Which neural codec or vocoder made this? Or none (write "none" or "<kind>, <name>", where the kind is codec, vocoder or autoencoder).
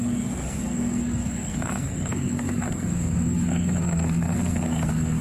codec, SNAC